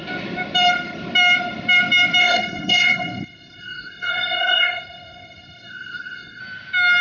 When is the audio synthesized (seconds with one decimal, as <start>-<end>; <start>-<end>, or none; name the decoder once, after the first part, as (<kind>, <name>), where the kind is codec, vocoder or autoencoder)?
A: 2.2-6.4 (codec, SNAC)

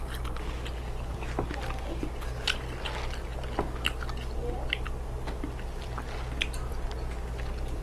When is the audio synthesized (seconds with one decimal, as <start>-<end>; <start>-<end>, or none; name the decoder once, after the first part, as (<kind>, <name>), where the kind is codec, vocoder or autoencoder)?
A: none

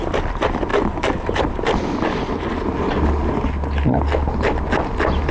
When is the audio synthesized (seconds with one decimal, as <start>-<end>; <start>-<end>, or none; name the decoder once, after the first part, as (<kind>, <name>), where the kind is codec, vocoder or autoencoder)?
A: none

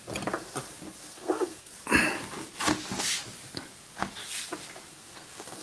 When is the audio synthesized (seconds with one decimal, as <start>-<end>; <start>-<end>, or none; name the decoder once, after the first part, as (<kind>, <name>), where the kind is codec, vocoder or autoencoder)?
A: 1.0-1.7 (codec, SNAC); 4.9-5.6

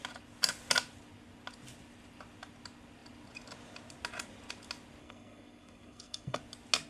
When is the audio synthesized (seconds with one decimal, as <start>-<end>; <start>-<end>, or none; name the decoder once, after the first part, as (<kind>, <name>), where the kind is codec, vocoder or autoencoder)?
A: 5.0-6.4 (codec, SNAC)

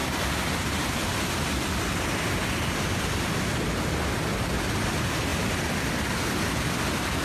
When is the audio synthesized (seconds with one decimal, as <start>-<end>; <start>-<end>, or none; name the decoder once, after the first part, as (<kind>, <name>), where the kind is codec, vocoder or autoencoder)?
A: none

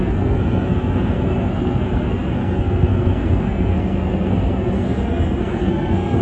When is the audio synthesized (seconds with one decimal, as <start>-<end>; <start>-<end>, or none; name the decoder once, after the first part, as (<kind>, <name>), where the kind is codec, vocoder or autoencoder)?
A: 0.0-6.2 (codec, SNAC)